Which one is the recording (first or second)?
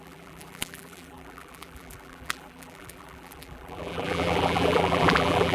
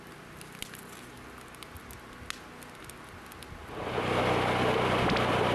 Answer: second